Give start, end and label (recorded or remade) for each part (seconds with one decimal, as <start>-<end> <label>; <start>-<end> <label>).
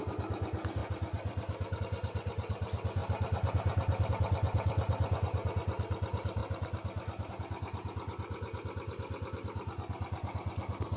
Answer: 0.0-0.8 recorded; 0.8-1.8 remade; 1.8-11.0 recorded